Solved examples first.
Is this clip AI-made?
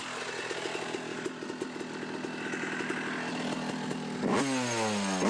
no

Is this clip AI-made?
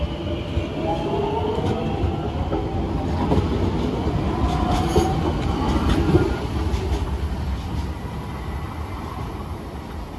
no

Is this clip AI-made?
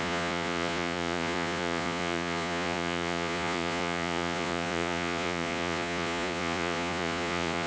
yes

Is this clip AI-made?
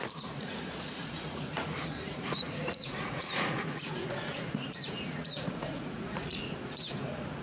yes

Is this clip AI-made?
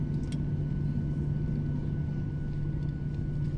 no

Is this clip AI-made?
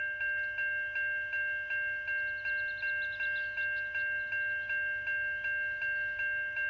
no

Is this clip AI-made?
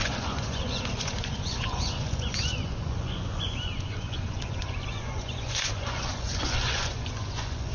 yes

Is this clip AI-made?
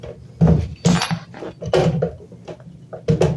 no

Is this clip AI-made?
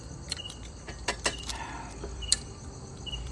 yes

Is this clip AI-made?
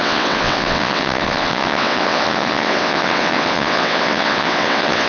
yes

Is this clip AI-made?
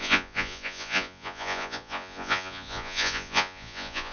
yes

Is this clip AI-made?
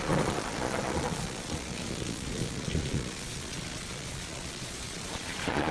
yes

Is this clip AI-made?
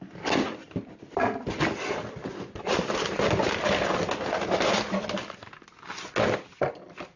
no